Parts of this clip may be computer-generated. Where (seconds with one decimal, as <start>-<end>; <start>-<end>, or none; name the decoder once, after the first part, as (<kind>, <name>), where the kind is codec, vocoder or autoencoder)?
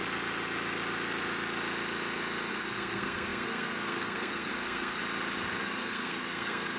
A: 2.5-5.0 (codec, SNAC); 5.6-6.8